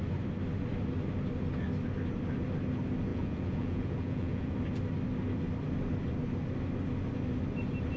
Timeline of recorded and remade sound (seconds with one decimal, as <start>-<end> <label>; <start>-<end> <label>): 0.0-3.1 recorded; 3.1-4.5 remade; 4.5-8.0 recorded